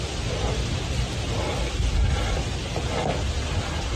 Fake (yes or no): no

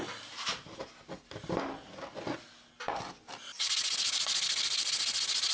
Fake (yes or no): no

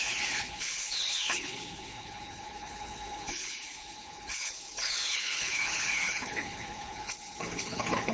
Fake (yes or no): yes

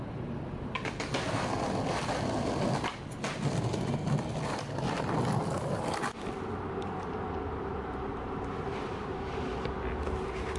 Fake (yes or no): no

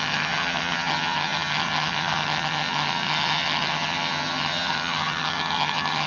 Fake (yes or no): yes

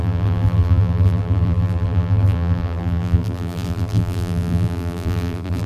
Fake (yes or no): yes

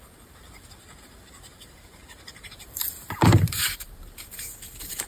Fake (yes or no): yes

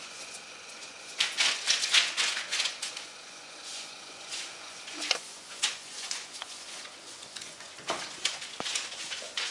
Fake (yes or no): yes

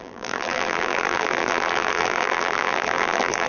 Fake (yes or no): yes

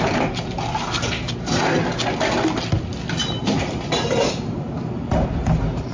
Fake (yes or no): no